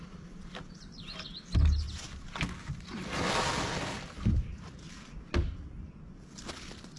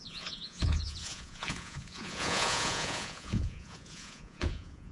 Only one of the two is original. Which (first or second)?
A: first